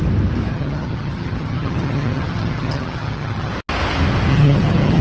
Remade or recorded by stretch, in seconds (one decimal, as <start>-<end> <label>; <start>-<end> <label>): 0.0-0.5 recorded; 0.5-3.5 remade; 3.5-4.3 recorded; 4.3-5.0 remade